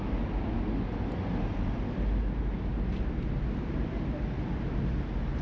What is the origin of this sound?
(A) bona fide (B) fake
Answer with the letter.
A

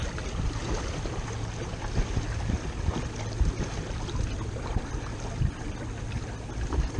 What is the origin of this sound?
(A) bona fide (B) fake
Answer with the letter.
A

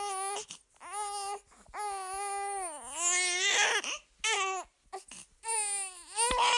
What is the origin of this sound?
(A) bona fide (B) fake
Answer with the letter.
A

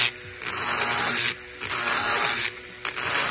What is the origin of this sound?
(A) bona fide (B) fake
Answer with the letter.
A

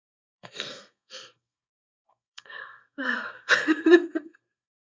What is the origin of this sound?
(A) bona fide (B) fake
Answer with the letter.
B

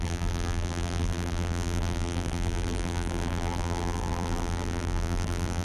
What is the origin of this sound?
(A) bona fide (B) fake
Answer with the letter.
B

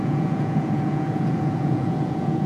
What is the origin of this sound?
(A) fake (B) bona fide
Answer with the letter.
A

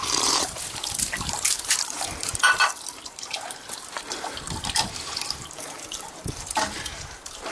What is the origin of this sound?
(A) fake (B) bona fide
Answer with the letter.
A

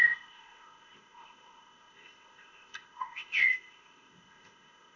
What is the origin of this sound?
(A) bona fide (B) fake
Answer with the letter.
B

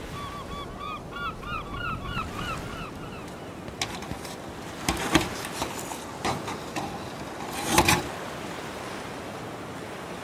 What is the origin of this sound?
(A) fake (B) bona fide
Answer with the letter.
B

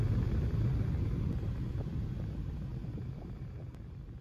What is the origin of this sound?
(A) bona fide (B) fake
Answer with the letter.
A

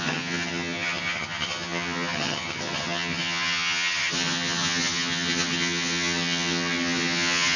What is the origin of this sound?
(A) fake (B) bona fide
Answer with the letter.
A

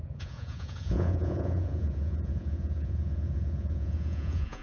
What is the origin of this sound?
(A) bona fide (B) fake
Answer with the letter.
B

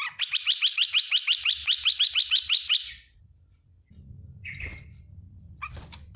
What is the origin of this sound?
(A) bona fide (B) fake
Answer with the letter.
B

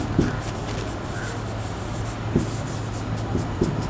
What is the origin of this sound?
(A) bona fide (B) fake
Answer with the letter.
A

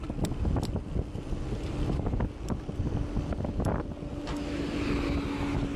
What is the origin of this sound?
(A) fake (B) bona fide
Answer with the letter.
B